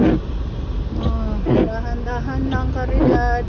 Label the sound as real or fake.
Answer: real